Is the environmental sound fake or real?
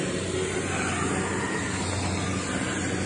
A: real